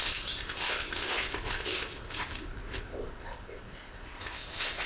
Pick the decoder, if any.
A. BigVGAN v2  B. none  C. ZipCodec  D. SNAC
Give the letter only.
C